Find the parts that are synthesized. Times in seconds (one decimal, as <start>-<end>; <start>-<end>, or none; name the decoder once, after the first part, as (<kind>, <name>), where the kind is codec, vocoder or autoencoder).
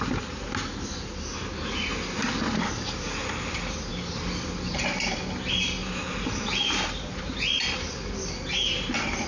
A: 5.8-7.4 (vocoder, BigVGAN v2)